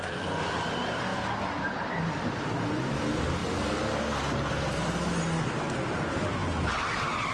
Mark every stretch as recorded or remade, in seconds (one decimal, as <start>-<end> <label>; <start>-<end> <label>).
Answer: 0.0-3.4 remade; 3.4-5.4 recorded; 5.4-6.4 remade; 6.4-7.3 recorded